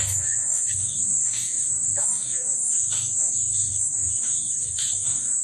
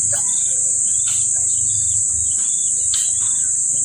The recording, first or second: second